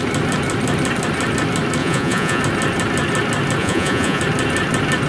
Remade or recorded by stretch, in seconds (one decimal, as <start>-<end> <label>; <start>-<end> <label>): 0.0-1.8 recorded; 1.8-2.4 remade; 2.4-3.6 recorded; 3.6-4.2 remade; 4.2-5.1 recorded